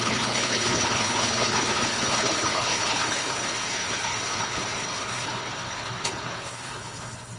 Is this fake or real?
fake